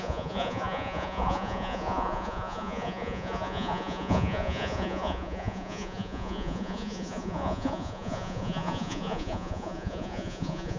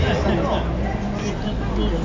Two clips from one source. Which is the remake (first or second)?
first